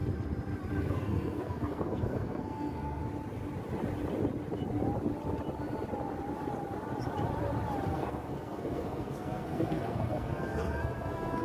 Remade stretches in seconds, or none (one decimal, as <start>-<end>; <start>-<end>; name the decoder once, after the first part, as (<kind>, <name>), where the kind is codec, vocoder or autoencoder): 0.8-3.0 (codec, SNAC); 7.9-11.4